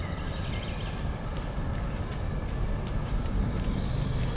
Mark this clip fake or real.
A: real